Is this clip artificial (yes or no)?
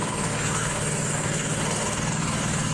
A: yes